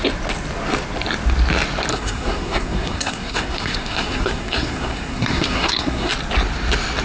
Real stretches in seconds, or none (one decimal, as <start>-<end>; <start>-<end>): 0.0-1.9; 6.1-7.0